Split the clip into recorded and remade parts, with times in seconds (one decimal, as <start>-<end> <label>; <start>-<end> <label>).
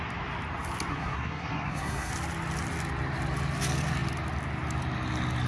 0.0-0.9 recorded; 0.9-2.1 remade; 2.1-5.5 recorded